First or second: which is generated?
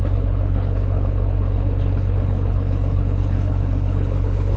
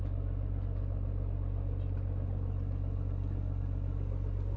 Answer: first